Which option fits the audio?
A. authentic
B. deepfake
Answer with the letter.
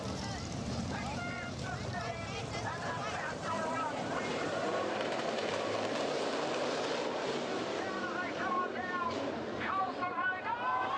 B